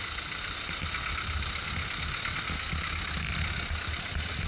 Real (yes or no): yes